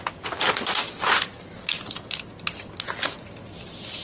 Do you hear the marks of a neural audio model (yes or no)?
no